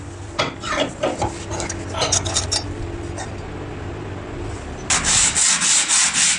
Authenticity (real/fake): real